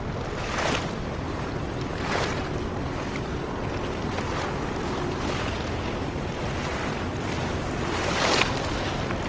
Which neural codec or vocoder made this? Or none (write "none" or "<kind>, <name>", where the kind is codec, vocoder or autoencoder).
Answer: none